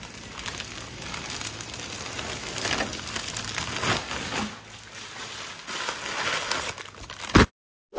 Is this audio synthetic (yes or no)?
no